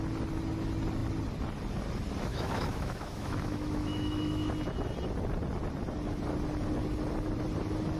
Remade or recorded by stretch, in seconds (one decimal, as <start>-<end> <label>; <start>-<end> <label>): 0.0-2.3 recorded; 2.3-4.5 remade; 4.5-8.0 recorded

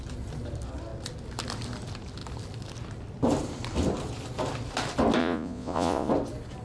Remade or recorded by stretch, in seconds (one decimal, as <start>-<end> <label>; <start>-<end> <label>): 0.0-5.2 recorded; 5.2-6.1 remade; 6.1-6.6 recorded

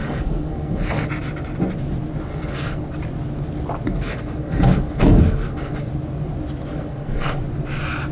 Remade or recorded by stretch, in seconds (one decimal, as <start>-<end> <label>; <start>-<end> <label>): 0.0-1.1 remade; 1.1-2.3 recorded; 2.3-2.9 remade; 2.9-3.9 recorded; 3.9-5.9 remade; 5.9-6.7 recorded; 6.7-7.4 remade; 7.4-8.1 recorded

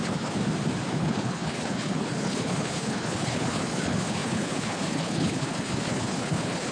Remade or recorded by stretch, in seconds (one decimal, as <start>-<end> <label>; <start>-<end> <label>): 0.0-0.4 remade; 0.4-0.9 recorded; 0.9-6.7 remade

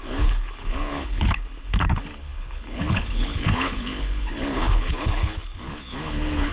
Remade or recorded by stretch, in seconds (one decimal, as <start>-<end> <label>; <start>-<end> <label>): 0.0-6.5 remade

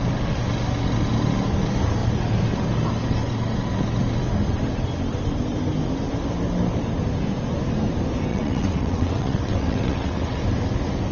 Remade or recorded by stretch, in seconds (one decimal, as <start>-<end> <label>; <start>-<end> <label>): 0.0-8.3 recorded; 8.3-10.4 remade; 10.4-11.1 recorded